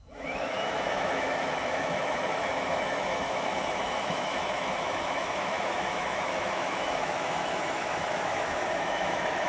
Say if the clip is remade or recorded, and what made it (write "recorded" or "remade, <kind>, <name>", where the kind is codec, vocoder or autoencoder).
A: remade, autoencoder, DAC-VAE